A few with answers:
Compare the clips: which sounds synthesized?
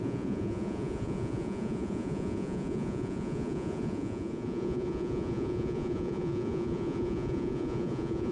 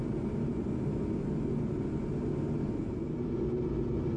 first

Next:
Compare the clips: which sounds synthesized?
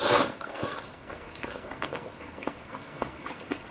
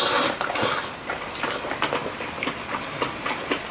first